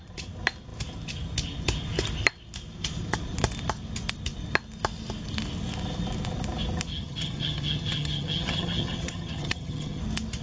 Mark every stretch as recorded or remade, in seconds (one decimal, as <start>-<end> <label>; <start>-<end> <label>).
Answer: 0.0-6.9 recorded; 6.9-10.0 remade; 10.0-10.4 recorded